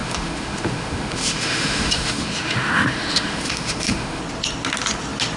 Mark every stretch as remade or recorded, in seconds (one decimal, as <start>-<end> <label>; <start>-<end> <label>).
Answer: 0.0-4.2 remade; 4.2-5.4 recorded